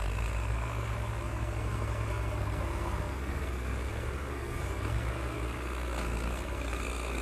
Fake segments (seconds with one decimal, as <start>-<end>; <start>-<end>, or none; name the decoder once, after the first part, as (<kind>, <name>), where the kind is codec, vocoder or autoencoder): 0.0-7.2 (codec, SNAC)